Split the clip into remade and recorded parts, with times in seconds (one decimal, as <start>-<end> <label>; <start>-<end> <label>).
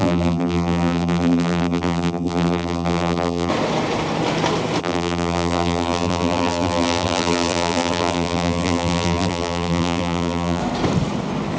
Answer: 0.0-3.5 remade; 3.5-4.8 recorded; 4.8-10.6 remade; 10.6-11.6 recorded